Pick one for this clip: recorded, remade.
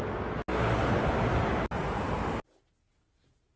recorded